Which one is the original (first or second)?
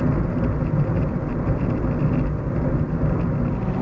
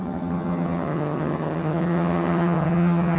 first